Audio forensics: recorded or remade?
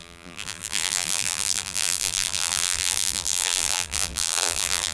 remade